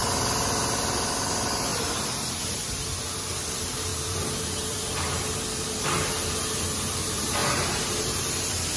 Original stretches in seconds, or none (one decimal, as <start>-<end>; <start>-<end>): 0.0-1.7; 2.4-3.9; 5.4-7.4; 8.4-8.8